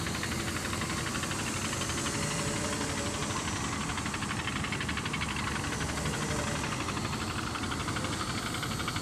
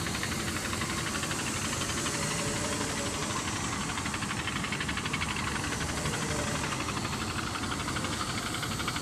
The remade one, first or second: second